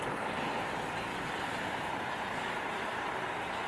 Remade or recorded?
recorded